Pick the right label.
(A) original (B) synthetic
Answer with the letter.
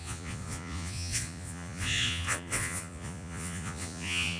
B